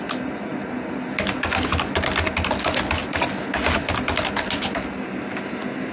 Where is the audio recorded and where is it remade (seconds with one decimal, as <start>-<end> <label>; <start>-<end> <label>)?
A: 0.0-5.9 recorded